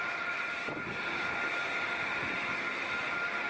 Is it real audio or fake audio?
real